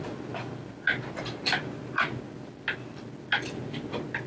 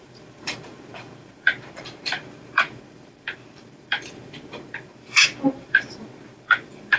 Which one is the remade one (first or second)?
second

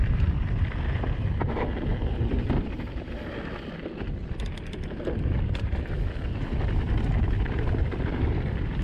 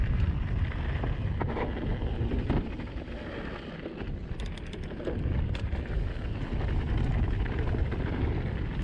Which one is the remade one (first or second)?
first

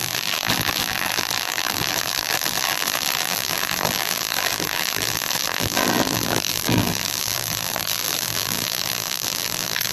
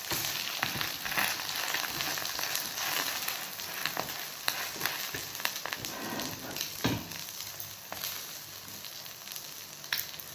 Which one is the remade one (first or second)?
first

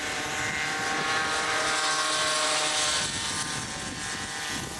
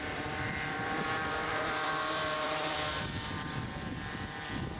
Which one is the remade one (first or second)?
second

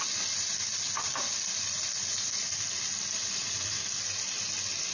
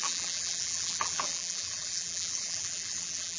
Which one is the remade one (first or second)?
second